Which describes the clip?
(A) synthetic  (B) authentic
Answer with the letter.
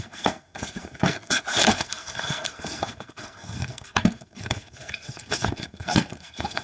A